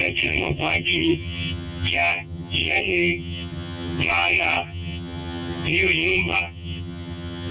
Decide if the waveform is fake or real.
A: fake